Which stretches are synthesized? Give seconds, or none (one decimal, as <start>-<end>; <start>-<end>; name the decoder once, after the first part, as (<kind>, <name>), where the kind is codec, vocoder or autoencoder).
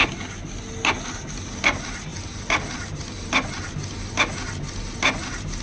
none